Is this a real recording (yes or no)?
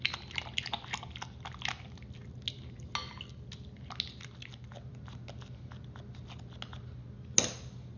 yes